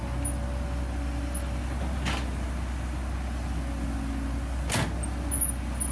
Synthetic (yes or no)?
no